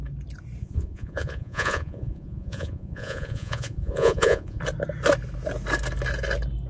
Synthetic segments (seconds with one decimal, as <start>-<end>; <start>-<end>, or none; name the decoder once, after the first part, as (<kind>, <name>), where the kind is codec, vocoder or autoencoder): 0.6-4.6 (vocoder, Vocos)